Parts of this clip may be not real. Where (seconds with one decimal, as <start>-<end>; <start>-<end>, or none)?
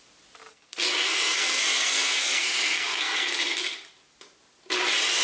0.5-3.6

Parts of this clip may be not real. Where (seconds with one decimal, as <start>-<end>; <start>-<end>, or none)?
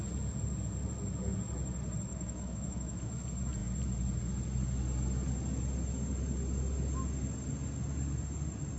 2.1-3.1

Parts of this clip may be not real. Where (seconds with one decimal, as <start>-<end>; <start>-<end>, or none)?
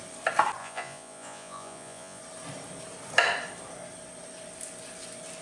0.6-2.2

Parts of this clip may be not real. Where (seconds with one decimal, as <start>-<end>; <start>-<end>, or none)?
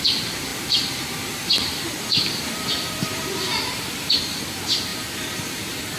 0.0-6.0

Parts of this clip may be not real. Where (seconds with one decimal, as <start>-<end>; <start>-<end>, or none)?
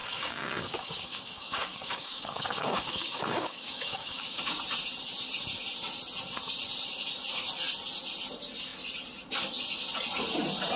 0.0-4.4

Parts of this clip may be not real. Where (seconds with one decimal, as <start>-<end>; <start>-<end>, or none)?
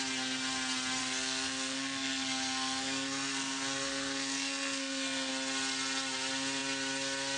1.0-5.3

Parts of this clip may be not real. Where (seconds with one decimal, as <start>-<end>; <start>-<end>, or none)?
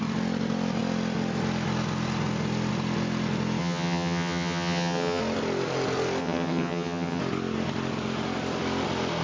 3.6-5.2; 6.2-7.2